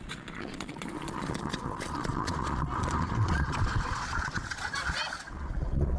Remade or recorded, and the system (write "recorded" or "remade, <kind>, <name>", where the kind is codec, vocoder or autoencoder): remade, vocoder, Vocos